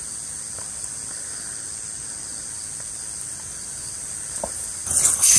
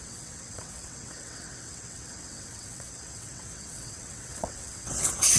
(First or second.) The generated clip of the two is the second